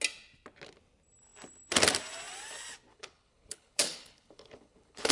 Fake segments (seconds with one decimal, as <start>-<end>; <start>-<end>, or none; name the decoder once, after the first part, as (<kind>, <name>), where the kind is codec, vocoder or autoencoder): 2.9-5.1 (codec, HILCodec)